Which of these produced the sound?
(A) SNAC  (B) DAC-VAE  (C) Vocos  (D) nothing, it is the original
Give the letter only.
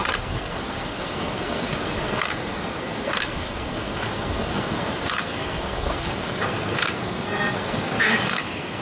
A